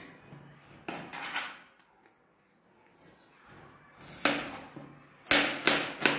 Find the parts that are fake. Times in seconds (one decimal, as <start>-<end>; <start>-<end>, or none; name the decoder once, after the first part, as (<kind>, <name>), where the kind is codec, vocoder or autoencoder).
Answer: none